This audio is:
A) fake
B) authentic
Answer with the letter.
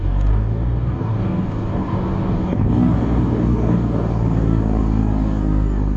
A